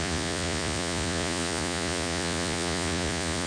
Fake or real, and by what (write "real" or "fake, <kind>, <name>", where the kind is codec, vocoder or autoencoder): fake, vocoder, Vocos